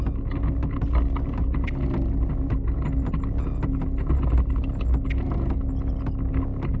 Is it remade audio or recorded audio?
recorded